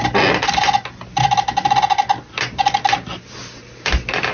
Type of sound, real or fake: real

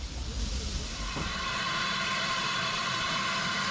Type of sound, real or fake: fake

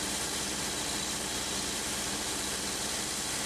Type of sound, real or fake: real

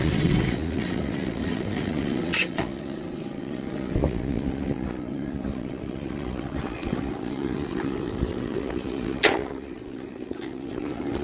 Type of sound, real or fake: fake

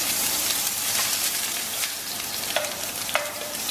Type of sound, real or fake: fake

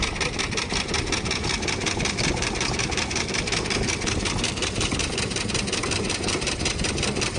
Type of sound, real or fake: fake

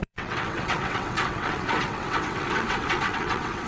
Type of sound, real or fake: fake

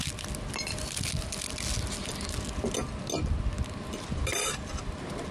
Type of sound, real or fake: real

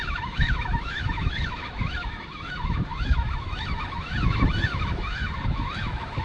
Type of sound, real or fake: fake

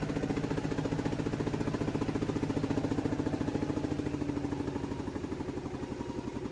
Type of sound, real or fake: real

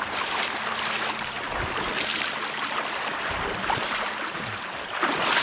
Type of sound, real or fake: real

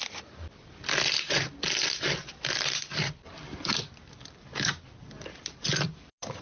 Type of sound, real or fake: real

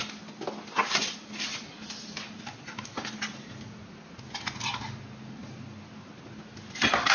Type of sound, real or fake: real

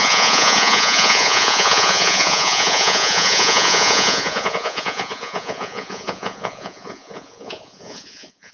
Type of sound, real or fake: fake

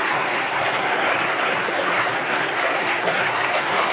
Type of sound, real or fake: fake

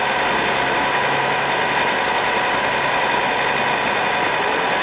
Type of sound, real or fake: real